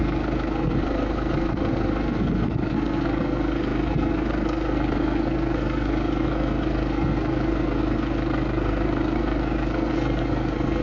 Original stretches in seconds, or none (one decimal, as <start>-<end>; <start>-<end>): none